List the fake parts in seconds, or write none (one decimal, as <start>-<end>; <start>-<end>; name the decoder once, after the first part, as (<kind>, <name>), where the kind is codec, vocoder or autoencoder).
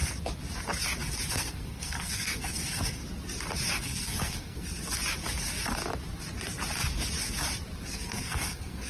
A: 1.3-3.0 (codec, SNAC); 3.8-4.8; 7.9-8.9